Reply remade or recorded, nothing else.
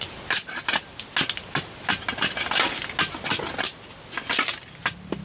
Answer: recorded